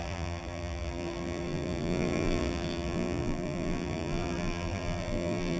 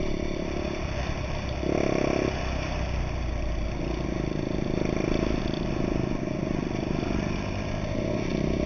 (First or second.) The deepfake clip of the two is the first